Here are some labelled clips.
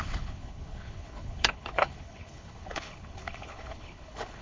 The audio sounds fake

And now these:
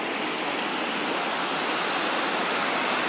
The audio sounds real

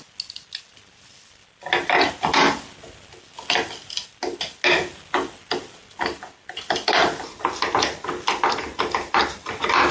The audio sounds real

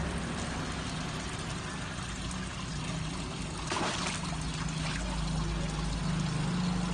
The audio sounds real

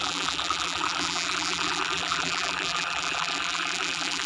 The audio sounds fake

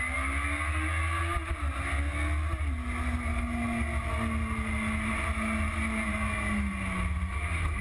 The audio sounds real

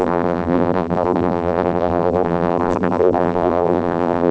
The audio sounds fake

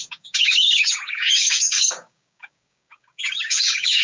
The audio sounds fake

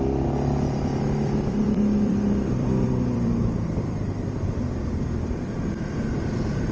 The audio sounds fake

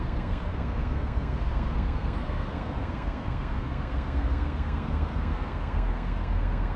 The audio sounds fake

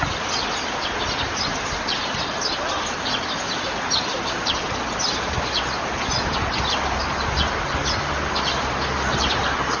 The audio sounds real